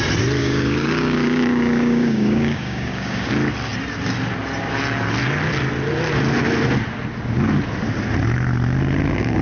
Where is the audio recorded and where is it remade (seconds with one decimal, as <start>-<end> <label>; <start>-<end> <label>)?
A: 0.0-0.4 recorded; 0.4-3.3 remade; 3.3-9.4 recorded